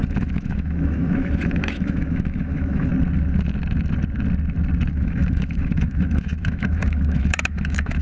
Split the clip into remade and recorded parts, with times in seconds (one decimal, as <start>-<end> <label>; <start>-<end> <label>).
0.0-2.9 remade; 2.9-4.9 recorded; 4.9-8.0 remade